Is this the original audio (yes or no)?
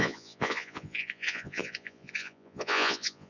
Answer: no